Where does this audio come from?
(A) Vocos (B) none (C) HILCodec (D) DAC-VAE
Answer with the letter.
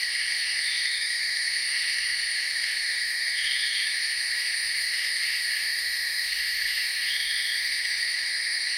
D